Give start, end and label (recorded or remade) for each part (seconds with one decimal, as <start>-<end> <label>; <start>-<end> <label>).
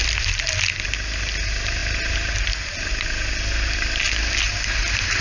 0.0-5.2 recorded